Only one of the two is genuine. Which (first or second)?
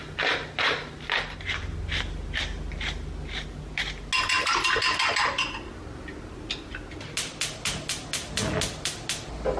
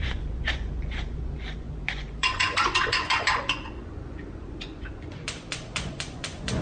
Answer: first